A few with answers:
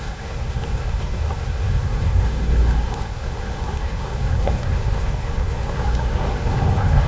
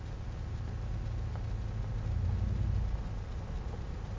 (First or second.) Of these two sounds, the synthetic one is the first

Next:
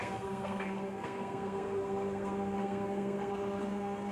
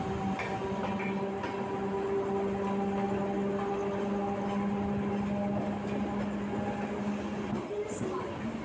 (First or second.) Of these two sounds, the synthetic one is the first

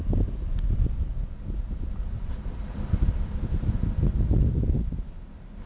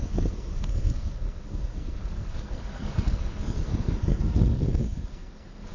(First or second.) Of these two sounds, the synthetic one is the second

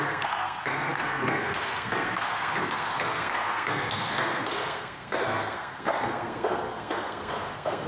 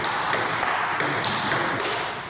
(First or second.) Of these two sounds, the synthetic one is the first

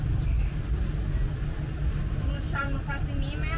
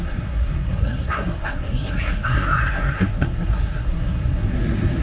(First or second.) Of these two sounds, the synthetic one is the second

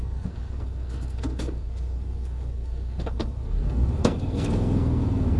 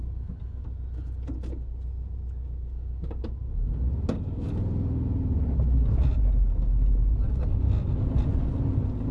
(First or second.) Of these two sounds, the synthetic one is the first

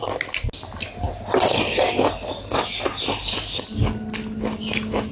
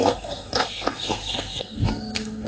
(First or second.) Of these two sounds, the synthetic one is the second